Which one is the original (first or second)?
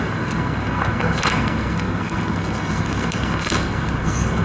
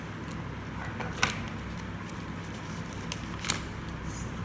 second